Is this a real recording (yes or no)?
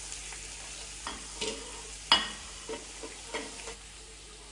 yes